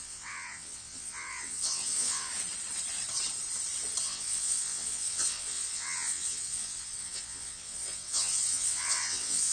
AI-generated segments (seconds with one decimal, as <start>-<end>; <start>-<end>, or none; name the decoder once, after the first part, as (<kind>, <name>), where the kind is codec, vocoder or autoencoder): 0.0-2.3 (vocoder, WaveNeXt); 4.0-9.5